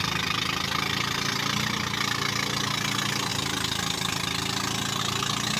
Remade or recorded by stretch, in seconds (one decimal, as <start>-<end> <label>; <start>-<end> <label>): 0.0-5.6 recorded